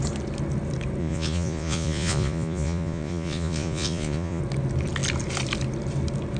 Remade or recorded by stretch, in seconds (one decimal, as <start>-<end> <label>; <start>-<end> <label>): 0.0-1.0 recorded; 1.0-4.4 remade; 4.4-6.4 recorded